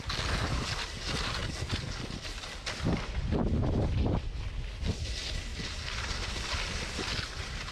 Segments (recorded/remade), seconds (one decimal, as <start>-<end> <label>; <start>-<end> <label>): 0.0-7.7 recorded